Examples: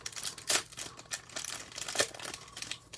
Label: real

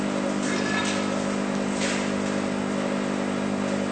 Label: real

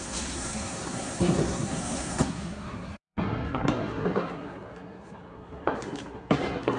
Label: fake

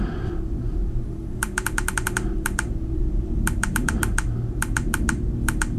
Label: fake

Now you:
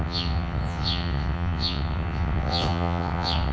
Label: fake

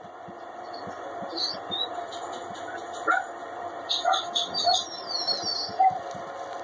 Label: real